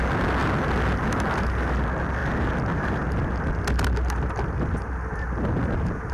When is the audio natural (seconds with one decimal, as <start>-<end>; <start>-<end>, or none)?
0.0-6.1